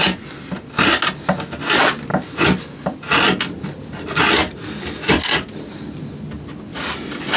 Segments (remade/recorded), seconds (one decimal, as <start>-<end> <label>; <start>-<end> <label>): 0.0-4.4 recorded; 4.4-5.6 remade; 5.6-6.7 recorded; 6.7-7.4 remade